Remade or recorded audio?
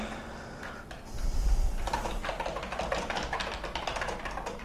recorded